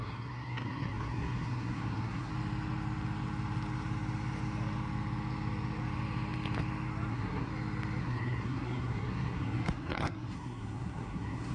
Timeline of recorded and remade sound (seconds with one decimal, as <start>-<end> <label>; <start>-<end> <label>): 0.0-2.3 remade; 2.3-7.1 recorded; 7.1-7.5 remade; 7.5-8.0 recorded; 8.0-11.5 remade